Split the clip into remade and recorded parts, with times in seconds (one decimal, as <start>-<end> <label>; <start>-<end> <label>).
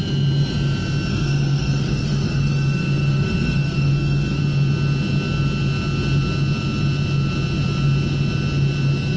0.0-1.1 recorded; 1.1-4.4 remade; 4.4-9.2 recorded